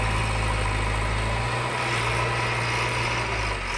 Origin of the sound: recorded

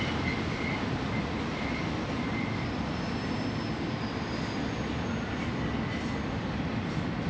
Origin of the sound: recorded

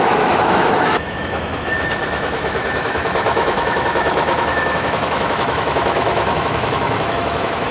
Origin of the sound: remade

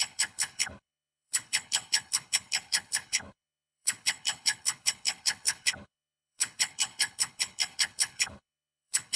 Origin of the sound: remade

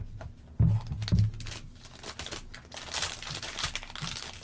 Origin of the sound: recorded